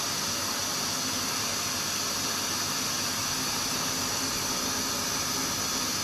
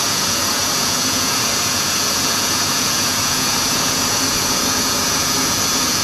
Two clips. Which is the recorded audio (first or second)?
first